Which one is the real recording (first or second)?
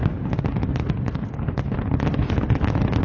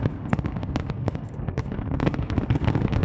first